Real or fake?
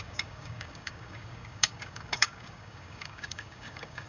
fake